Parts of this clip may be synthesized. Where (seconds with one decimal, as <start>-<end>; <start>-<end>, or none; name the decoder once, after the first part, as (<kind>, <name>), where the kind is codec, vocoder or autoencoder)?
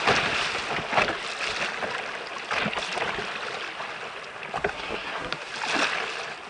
4.6-5.5 (codec, SNAC)